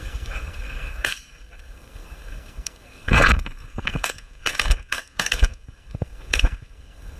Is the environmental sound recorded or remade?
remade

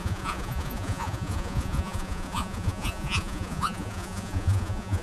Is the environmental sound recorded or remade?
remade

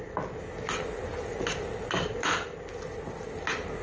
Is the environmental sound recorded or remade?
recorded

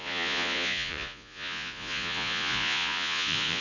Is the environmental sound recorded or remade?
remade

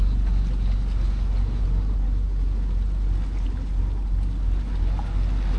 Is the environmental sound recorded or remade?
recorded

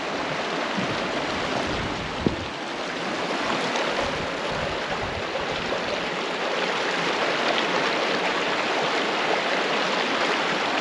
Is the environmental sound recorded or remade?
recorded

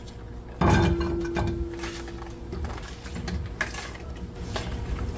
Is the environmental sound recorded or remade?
recorded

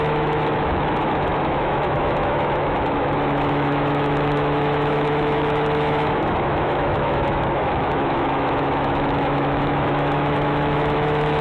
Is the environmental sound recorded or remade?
remade